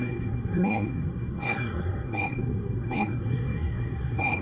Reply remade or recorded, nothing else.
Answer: remade